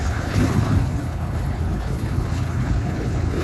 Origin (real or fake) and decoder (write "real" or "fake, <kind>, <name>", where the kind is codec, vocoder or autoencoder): fake, codec, HILCodec